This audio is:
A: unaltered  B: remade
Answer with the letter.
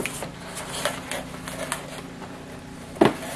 A